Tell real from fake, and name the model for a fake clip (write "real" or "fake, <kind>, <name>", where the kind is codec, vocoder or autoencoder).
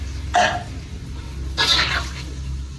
real